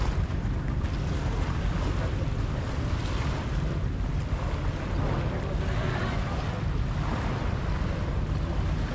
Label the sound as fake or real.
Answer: real